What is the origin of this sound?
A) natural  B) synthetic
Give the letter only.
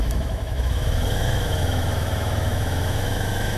B